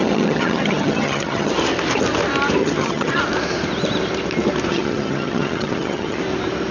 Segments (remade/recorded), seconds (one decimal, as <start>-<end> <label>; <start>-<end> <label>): 0.0-1.5 remade; 1.5-2.6 recorded; 2.6-3.2 remade; 3.2-4.7 recorded; 4.7-6.2 remade; 6.2-6.7 recorded